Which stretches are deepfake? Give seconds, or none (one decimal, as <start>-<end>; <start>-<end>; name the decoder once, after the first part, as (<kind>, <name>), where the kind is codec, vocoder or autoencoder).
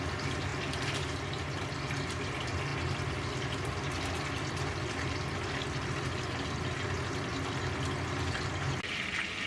7.3-8.7 (vocoder, BigVGAN v2)